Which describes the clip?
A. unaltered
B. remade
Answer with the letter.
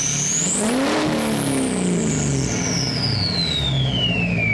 A